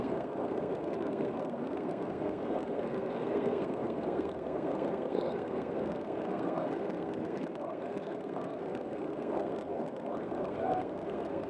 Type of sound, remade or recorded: remade